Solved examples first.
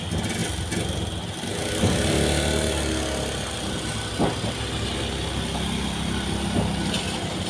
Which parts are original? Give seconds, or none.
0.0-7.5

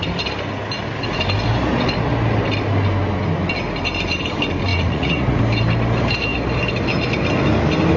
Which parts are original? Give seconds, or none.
0.0-4.7; 5.4-8.0